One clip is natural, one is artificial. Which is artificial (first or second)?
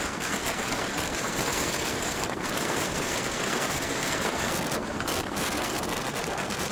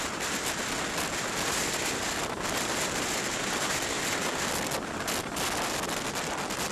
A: first